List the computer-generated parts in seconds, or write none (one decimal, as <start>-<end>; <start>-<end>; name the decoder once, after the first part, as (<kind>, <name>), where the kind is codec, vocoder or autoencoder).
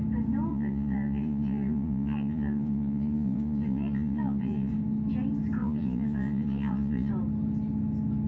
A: 0.5-4.7 (vocoder, Vocos); 5.6-7.1